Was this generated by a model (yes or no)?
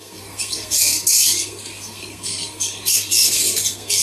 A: yes